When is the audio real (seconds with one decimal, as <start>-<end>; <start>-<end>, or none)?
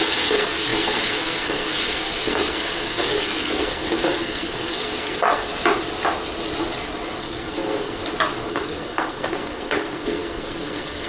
5.5-7.2; 8.0-8.5